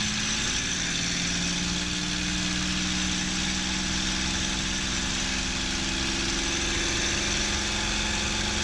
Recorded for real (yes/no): yes